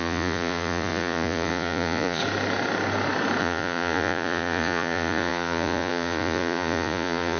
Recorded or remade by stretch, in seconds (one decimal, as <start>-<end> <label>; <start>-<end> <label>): 0.0-2.2 remade; 2.2-3.4 recorded; 3.4-7.4 remade